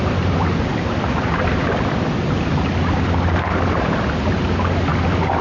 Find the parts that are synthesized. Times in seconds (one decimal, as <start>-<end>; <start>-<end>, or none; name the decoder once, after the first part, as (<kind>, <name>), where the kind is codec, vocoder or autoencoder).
none